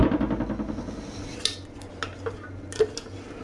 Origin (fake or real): real